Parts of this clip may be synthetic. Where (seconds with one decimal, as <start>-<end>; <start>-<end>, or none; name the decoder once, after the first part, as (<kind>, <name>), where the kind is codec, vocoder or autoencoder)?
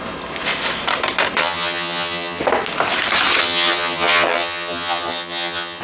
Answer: 1.4-2.4 (vocoder, HiFi-GAN); 3.4-5.8